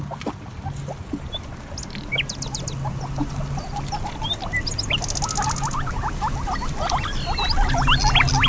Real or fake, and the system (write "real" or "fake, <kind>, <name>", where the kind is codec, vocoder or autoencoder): real